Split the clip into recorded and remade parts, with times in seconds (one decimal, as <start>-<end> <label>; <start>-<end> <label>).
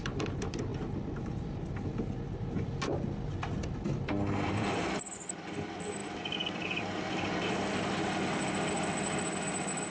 0.0-9.9 recorded